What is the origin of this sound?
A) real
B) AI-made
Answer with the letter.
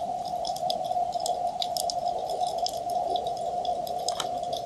A